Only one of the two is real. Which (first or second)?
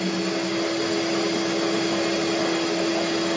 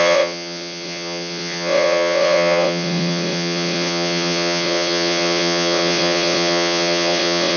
first